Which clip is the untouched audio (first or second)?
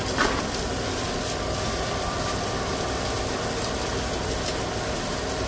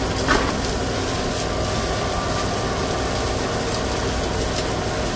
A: second